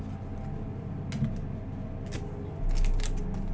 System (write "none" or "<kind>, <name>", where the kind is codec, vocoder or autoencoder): none